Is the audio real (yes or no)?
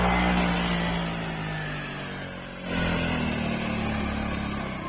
yes